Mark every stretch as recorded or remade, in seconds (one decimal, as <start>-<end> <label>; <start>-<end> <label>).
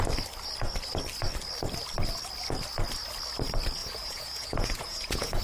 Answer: 0.0-3.8 recorded; 3.8-5.4 remade